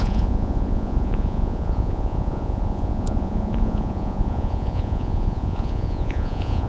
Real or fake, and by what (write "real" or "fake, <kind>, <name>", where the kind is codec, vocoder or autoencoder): fake, vocoder, Vocos